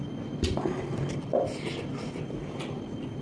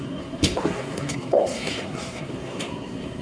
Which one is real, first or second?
first